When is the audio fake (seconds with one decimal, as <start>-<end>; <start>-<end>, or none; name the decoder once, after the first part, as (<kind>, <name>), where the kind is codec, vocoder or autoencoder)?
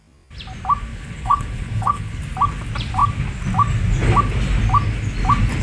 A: 0.9-2.2 (codec, HILCodec)